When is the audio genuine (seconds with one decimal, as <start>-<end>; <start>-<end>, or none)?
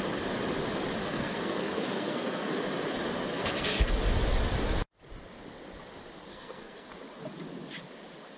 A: 0.0-1.0; 2.5-3.3; 3.9-6.3; 6.9-8.4